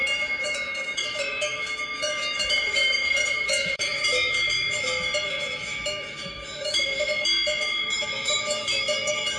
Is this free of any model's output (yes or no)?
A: no